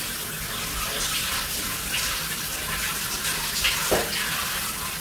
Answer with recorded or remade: recorded